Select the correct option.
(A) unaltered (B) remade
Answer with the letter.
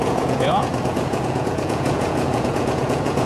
B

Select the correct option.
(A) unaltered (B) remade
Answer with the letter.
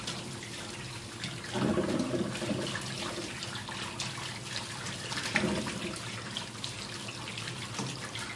A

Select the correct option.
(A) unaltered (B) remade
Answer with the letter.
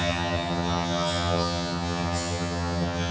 B